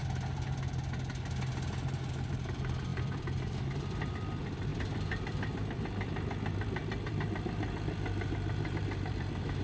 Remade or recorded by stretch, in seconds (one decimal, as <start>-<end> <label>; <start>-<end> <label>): 0.0-2.1 recorded; 2.1-9.6 remade